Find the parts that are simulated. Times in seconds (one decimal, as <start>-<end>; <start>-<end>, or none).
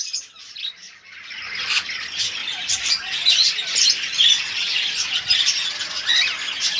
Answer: 0.8-2.0; 2.4-2.9; 3.7-4.3